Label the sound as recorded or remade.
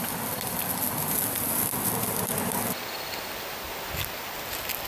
recorded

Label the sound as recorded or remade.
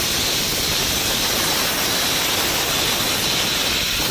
recorded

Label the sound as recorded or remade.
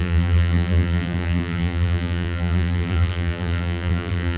remade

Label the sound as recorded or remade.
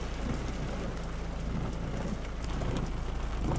recorded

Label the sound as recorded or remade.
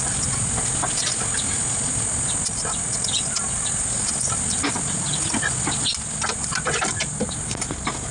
recorded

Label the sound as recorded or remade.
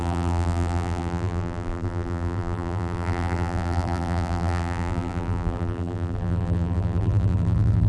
remade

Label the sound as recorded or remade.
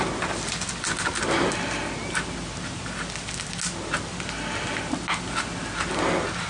recorded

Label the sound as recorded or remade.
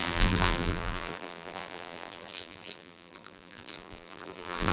remade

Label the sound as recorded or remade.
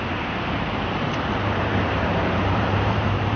remade